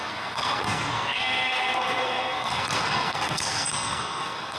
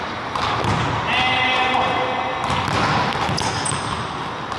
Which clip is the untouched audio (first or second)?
second